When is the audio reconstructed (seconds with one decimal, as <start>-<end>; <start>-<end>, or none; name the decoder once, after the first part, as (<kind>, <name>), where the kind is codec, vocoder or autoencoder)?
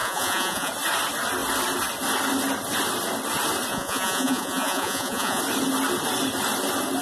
0.0-0.7 (vocoder, Vocos); 3.7-5.4